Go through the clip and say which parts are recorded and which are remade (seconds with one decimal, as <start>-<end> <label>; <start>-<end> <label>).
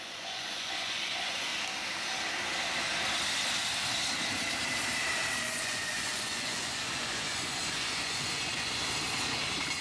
0.0-1.5 remade; 1.5-5.4 recorded; 5.4-8.8 remade; 8.8-9.8 recorded